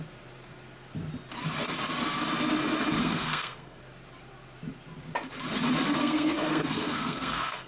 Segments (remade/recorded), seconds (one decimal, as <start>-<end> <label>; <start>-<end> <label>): 0.0-3.0 recorded; 3.0-3.8 remade; 3.8-6.0 recorded; 6.0-7.7 remade